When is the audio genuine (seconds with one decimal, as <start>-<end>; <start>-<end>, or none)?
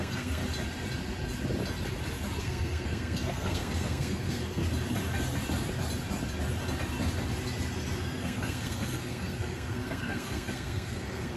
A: 0.4-2.4; 4.6-8.0